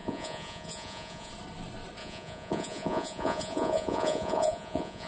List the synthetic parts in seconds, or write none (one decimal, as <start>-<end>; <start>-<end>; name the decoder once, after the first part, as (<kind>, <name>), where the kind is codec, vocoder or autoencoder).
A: 0.0-1.3 (vocoder, Vocos); 2.0-5.1